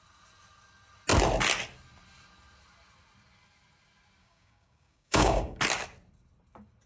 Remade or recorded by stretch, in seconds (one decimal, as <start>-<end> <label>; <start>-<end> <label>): 0.0-4.2 recorded; 4.2-5.6 remade; 5.6-6.9 recorded